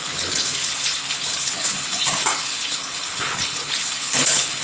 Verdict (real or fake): fake